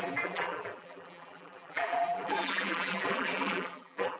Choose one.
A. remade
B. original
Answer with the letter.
A